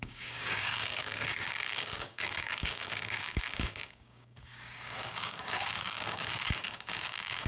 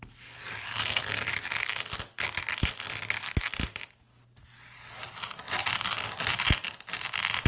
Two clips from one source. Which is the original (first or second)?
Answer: second